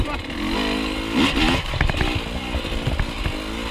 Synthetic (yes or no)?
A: no